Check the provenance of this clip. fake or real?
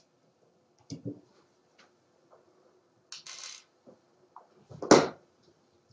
real